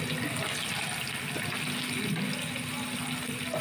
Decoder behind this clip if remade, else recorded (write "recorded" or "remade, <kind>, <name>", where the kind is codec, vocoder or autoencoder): recorded